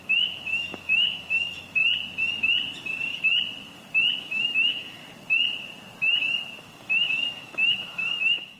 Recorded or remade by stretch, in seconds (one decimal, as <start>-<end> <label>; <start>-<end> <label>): 0.0-1.8 remade; 1.8-4.2 recorded; 4.2-5.0 remade; 5.0-6.6 recorded; 6.6-8.6 remade